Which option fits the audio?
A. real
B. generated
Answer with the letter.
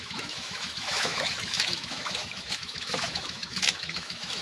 B